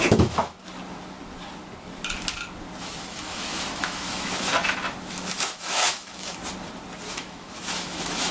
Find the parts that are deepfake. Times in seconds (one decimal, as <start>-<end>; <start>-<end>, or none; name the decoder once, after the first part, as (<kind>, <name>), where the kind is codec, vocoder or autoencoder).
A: 0.0-0.6 (autoencoder, DAC-VAE); 2.8-4.5; 5.1-6.4; 7.1-8.3